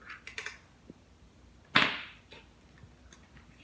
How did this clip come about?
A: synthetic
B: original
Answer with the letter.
A